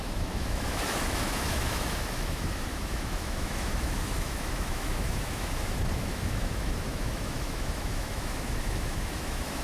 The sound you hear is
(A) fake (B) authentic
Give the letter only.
A